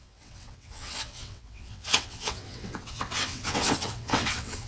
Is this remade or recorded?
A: remade